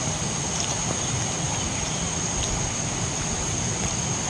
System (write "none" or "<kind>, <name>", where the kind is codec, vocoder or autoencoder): none